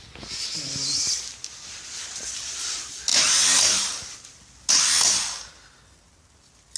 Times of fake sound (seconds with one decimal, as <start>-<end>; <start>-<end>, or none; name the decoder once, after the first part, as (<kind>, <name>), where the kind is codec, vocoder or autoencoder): none